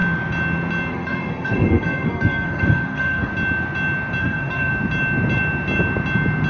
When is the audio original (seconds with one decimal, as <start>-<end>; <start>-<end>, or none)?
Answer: 0.0-0.9; 3.3-4.2; 4.7-6.5